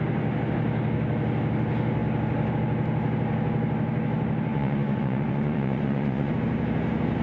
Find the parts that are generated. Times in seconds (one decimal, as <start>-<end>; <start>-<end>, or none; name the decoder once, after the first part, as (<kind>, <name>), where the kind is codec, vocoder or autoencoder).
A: 4.5-6.3 (vocoder, Vocos)